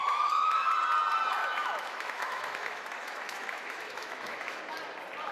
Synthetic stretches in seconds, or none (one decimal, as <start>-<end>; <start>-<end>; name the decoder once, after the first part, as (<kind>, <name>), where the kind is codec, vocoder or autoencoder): 0.0-0.7 (autoencoder, DAC-VAE); 1.4-4.6